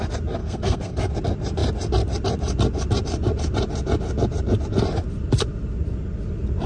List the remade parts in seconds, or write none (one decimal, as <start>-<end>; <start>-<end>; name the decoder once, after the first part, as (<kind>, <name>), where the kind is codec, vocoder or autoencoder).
0.4-1.1 (codec, SNAC)